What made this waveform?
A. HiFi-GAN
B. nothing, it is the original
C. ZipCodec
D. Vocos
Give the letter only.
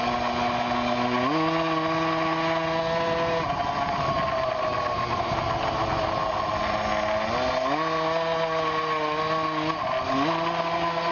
B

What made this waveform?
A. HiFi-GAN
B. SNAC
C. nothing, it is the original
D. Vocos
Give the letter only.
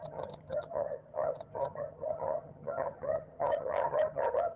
A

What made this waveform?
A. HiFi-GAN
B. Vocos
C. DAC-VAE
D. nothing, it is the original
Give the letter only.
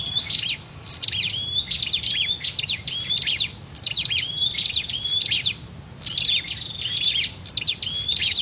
D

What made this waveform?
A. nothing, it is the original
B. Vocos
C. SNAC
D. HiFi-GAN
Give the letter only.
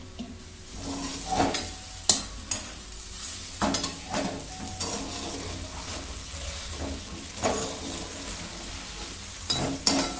A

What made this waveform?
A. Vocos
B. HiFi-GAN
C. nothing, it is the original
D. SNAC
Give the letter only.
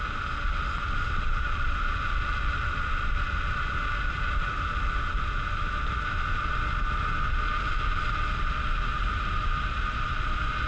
C